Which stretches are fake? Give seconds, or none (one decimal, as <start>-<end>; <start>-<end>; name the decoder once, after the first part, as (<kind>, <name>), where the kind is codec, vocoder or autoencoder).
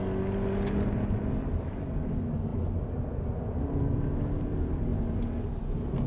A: none